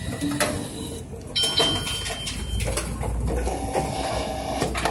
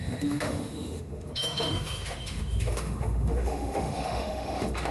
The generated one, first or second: second